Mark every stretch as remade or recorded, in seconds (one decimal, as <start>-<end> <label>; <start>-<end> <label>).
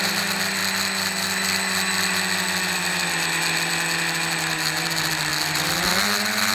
0.0-6.5 recorded